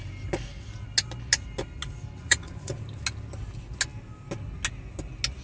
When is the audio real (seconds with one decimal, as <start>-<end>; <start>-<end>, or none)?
0.0-2.2; 2.7-5.4